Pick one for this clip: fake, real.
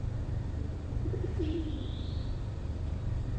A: fake